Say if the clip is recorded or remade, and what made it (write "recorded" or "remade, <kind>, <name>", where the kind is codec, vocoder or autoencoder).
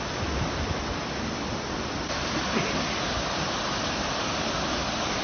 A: recorded